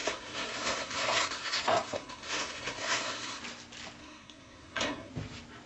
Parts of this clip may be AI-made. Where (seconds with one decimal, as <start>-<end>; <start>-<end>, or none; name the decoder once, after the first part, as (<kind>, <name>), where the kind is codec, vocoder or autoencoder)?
0.0-3.4 (codec, SNAC); 4.0-5.1